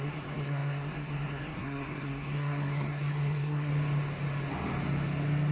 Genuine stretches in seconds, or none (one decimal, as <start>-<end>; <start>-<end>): 3.7-5.5